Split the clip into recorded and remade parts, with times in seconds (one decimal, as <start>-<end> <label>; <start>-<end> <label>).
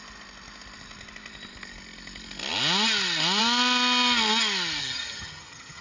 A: 0.0-4.8 recorded; 4.8-5.8 remade